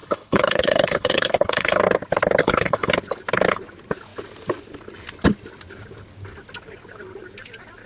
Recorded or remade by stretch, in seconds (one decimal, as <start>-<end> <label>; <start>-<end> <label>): 0.0-1.8 remade; 1.8-2.4 recorded; 2.4-2.9 remade; 2.9-7.9 recorded